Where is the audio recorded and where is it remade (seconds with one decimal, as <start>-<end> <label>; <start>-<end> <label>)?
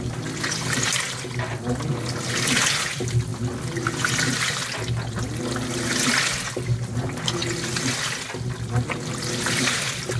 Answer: 0.0-10.2 recorded